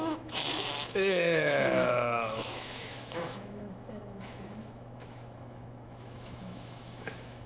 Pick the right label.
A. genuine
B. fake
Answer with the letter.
B